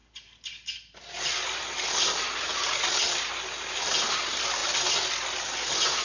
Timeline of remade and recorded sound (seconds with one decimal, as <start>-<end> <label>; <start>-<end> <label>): 0.0-6.0 recorded